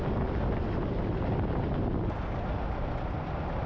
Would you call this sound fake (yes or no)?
no